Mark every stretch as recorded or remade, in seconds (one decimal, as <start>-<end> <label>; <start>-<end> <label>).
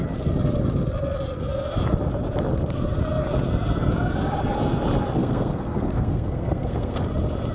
0.0-5.2 recorded; 5.2-7.0 remade; 7.0-7.5 recorded